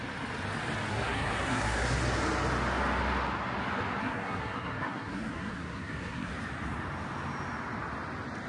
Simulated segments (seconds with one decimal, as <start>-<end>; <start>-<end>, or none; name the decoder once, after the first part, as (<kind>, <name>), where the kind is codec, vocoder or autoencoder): 0.9-2.0 (codec, SNAC); 4.0-6.3